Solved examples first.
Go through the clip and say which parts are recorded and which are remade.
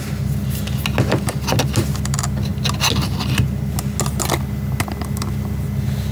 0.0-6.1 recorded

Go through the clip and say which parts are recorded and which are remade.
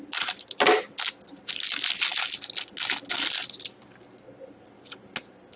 0.0-5.6 recorded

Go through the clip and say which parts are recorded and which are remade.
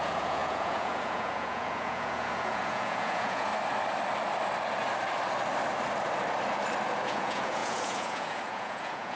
0.0-3.5 remade; 3.5-7.0 recorded; 7.0-9.2 remade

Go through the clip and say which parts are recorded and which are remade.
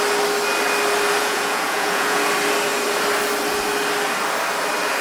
0.0-1.2 recorded; 1.2-2.2 remade; 2.2-5.0 recorded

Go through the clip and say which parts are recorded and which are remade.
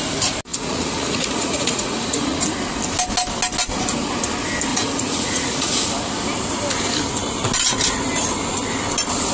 0.0-0.5 recorded; 0.5-2.4 remade; 2.4-4.7 recorded; 4.7-5.9 remade; 5.9-9.3 recorded